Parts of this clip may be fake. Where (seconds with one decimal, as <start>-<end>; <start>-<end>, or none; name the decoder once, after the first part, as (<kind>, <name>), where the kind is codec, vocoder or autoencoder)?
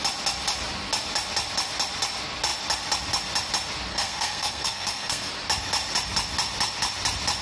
3.9-5.3 (codec, SNAC)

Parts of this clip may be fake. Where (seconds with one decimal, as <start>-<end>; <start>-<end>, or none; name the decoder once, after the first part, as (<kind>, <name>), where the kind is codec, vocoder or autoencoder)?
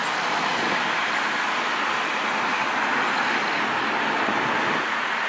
none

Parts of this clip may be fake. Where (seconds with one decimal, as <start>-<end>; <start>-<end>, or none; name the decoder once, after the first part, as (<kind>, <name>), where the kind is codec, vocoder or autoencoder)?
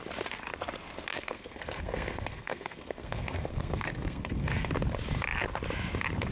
1.1-4.7 (codec, SNAC)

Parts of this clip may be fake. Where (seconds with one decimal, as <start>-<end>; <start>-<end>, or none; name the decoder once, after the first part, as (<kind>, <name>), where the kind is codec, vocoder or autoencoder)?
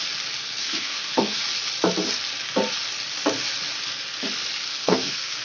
0.6-1.4 (codec, SNAC); 4.7-5.4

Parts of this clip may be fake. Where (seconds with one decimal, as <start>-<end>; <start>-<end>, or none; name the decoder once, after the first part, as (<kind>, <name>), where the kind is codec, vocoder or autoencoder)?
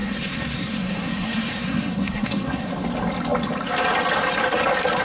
0.0-2.7 (codec, SNAC)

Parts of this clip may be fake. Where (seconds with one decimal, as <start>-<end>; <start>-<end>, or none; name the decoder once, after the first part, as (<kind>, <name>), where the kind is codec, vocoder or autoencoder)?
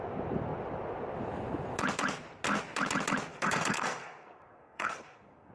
3.3-5.5 (codec, SNAC)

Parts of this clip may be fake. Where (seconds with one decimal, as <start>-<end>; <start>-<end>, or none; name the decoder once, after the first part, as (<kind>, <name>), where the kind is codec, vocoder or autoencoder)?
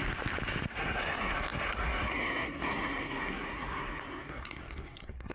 0.7-5.3 (codec, SNAC)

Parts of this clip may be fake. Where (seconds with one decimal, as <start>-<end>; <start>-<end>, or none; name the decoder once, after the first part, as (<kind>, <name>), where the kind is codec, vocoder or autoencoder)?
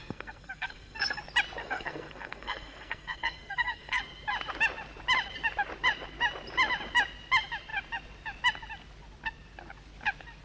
0.0-1.2 (codec, SNAC); 1.6-4.0